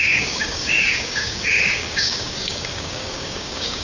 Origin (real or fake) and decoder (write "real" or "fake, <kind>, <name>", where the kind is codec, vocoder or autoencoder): fake, codec, DAC